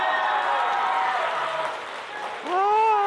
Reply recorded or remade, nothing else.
recorded